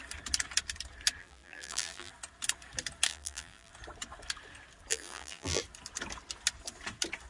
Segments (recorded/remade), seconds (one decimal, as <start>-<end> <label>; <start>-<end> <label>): 0.0-1.2 recorded; 1.2-2.1 remade; 2.1-3.1 recorded; 3.1-3.7 remade; 3.7-4.9 recorded; 4.9-5.6 remade; 5.6-7.3 recorded